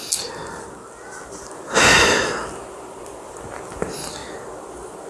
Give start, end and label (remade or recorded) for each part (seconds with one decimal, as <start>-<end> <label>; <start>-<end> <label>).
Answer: 0.0-5.1 recorded